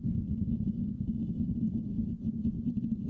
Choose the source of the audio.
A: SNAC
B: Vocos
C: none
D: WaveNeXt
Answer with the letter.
C